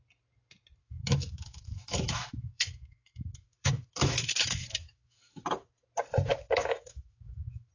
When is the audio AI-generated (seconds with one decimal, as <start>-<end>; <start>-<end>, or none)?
0.8-5.4; 6.3-7.7